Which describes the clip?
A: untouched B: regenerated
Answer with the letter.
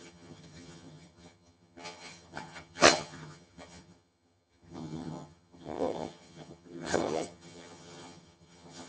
B